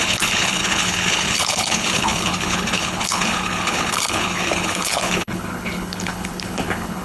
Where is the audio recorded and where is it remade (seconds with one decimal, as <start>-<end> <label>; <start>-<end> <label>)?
0.0-7.0 remade

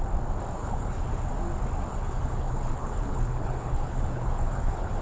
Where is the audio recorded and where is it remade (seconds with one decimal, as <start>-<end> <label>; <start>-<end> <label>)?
0.0-0.6 recorded; 0.6-1.3 remade; 1.3-1.9 recorded; 1.9-5.0 remade